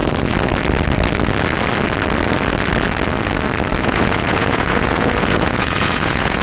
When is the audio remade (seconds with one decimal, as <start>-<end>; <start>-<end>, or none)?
3.8-6.4